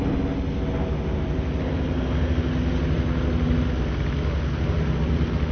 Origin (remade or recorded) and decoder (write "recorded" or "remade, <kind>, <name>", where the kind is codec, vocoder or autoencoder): recorded